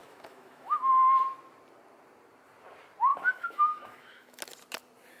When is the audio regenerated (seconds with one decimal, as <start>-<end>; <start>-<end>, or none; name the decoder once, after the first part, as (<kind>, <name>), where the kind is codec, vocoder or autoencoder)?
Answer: 0.0-0.9 (autoencoder, DAC-VAE); 3.1-4.4